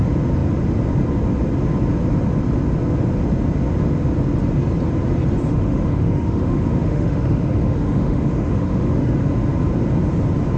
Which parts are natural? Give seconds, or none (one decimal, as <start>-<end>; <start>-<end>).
0.0-5.5; 9.1-10.6